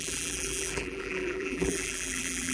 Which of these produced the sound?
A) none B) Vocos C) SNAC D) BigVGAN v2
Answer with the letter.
D